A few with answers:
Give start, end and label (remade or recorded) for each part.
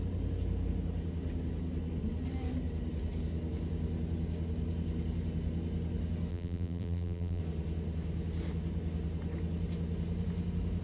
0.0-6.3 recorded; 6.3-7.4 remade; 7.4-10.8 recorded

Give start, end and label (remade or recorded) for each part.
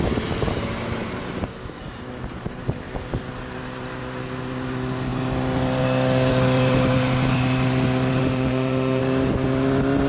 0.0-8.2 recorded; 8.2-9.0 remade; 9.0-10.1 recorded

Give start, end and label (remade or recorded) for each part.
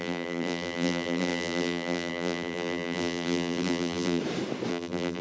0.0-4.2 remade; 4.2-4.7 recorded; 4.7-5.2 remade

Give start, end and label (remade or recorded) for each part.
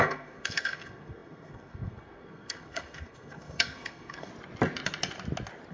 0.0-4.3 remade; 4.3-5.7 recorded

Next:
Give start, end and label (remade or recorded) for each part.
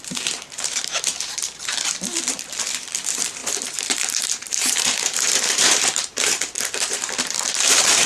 0.0-8.1 remade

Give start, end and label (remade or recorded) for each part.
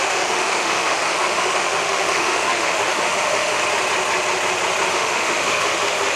0.0-3.6 remade; 3.6-4.9 recorded; 4.9-6.2 remade